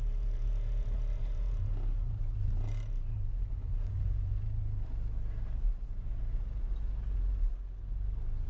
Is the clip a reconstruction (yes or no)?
yes